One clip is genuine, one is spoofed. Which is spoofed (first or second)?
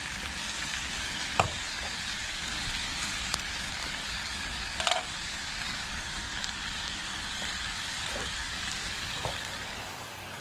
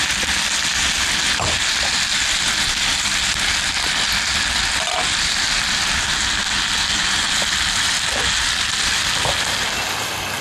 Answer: first